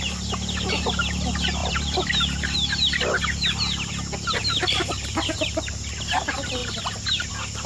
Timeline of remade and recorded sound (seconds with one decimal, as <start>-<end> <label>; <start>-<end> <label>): 0.0-1.6 recorded; 1.6-3.9 remade; 3.9-4.4 recorded; 4.4-5.3 remade; 5.3-6.6 recorded; 6.6-7.3 remade; 7.3-7.7 recorded

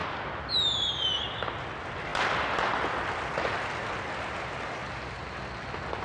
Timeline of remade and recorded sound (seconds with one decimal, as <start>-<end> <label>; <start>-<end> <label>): 0.0-6.0 recorded

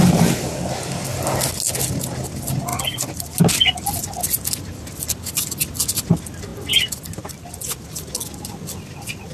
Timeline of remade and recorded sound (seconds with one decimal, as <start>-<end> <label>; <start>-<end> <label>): 0.0-9.3 recorded

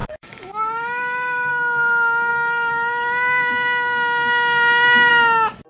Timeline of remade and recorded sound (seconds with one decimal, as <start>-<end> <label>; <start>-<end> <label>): 0.0-1.5 remade; 1.5-5.7 recorded

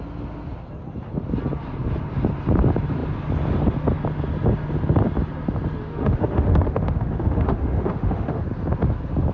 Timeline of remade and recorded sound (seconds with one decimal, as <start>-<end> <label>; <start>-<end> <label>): 0.0-5.9 recorded; 5.9-8.4 remade; 8.4-9.3 recorded

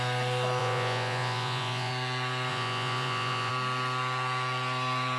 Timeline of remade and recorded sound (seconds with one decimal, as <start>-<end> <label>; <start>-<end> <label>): 0.0-0.6 recorded; 0.6-1.9 remade; 1.9-2.5 recorded; 2.5-3.5 remade; 3.5-5.2 recorded